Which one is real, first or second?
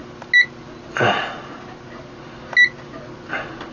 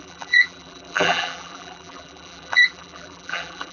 first